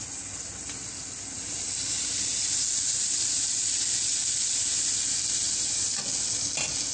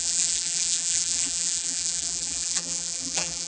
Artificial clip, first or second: second